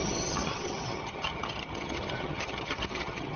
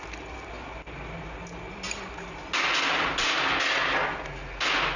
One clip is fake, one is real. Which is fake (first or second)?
first